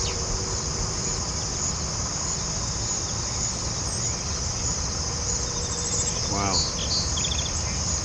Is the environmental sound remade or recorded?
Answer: recorded